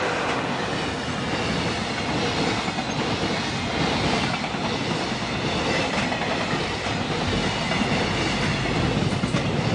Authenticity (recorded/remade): recorded